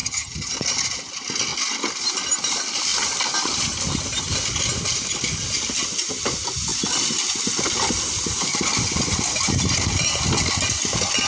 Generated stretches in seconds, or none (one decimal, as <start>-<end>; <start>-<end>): 0.0-0.5